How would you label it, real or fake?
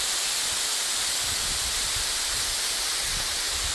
real